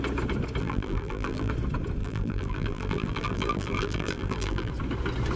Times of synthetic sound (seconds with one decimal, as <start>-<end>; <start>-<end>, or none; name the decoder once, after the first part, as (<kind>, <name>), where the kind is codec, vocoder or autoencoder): 0.6-1.5 (vocoder, BigVGAN v2); 2.0-4.7